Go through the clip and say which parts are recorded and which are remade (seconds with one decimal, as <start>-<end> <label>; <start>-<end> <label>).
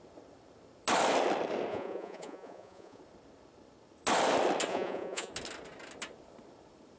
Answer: 0.0-1.7 recorded; 1.7-3.0 remade; 3.0-4.7 recorded; 4.7-5.3 remade; 5.3-7.0 recorded